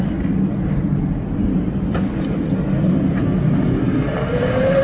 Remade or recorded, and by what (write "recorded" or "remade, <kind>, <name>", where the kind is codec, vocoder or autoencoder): recorded